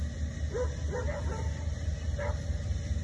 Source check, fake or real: real